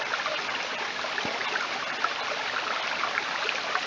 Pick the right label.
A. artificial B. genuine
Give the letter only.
B